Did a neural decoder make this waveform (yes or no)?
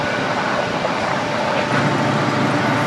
no